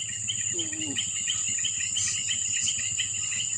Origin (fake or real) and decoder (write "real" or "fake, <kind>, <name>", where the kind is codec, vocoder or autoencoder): real